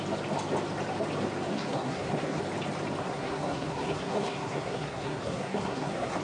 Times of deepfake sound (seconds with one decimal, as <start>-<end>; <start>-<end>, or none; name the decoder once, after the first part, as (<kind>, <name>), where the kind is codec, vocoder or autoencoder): 1.5-2.4 (codec, SNAC); 3.0-6.2